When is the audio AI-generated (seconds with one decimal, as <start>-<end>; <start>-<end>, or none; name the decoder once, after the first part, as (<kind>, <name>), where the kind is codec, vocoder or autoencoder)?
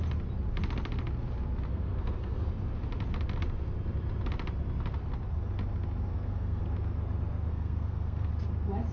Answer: 1.7-2.5 (codec, SNAC); 6.1-6.6; 7.5-8.3